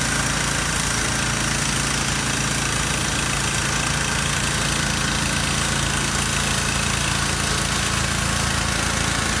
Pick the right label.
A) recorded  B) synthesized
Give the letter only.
A